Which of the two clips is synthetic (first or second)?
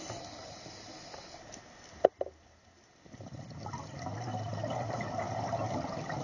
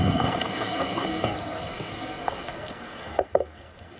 second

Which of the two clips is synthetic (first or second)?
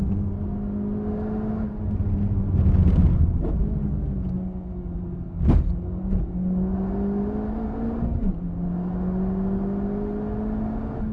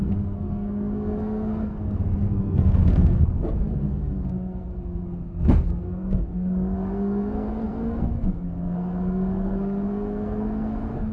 second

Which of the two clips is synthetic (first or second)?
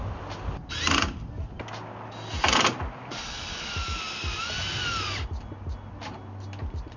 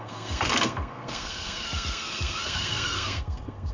second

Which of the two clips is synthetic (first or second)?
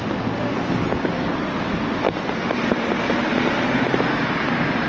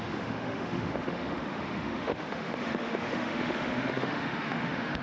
second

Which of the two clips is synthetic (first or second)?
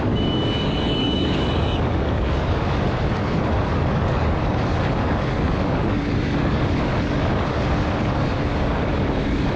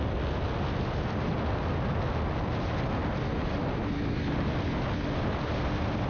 first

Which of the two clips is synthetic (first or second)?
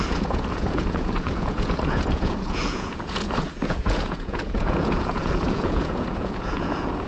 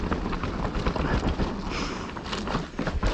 first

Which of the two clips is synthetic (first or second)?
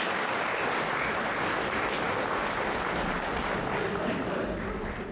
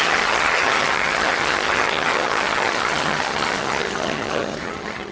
second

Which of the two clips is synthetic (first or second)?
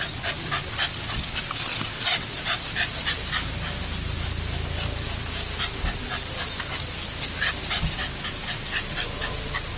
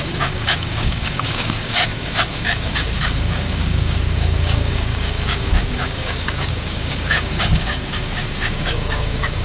second